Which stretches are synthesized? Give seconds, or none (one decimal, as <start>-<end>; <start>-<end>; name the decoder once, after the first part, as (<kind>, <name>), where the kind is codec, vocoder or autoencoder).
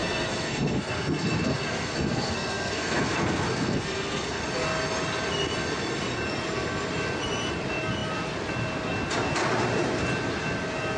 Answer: 0.0-4.4 (codec, SNAC)